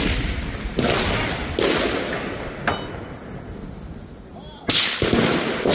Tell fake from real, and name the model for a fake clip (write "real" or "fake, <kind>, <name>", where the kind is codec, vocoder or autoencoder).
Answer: real